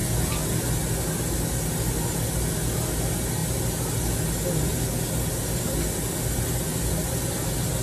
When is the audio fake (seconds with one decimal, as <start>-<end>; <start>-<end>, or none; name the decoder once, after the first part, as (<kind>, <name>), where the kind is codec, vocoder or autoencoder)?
none